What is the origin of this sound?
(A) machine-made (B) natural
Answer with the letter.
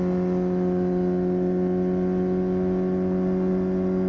B